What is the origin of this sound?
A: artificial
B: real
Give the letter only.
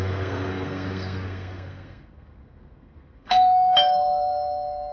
A